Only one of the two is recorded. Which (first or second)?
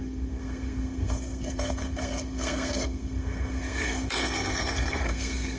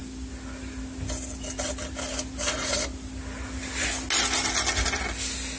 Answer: second